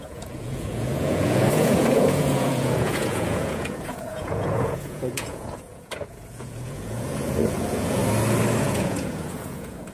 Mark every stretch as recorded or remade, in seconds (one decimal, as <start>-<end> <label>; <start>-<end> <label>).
0.0-8.0 remade; 8.0-8.6 recorded; 8.6-9.9 remade